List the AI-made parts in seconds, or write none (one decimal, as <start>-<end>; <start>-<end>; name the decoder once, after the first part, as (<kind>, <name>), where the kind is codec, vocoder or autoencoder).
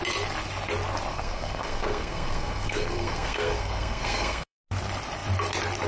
1.1-4.6 (codec, SNAC)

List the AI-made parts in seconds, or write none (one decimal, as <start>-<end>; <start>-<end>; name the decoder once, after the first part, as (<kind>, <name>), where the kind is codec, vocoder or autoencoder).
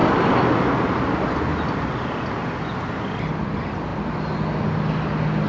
none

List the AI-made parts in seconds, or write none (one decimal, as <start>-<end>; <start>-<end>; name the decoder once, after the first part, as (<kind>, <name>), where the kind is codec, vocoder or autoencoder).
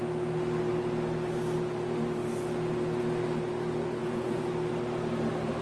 4.0-4.5 (vocoder, Vocos)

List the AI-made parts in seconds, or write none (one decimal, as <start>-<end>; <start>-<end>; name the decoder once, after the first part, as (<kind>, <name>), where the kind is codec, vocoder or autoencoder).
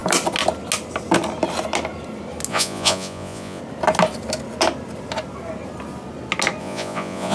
2.5-3.6 (vocoder, Vocos); 6.6-7.3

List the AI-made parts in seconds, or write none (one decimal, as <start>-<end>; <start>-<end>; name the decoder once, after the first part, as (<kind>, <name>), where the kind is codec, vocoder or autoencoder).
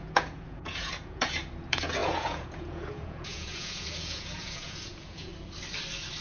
0.0-5.3 (vocoder, Vocos)